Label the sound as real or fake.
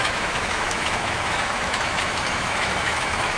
fake